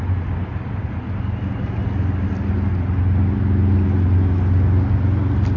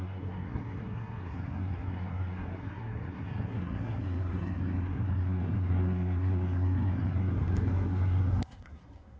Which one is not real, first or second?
second